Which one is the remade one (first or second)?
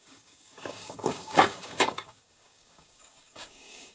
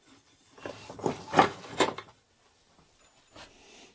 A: first